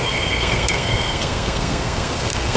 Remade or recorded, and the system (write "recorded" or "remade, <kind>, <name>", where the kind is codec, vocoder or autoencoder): remade, codec, SNAC